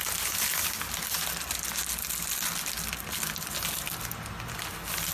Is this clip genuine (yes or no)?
yes